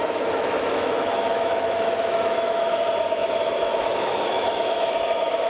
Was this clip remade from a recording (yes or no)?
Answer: yes